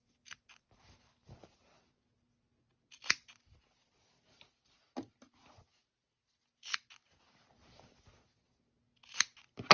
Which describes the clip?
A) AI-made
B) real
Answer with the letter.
B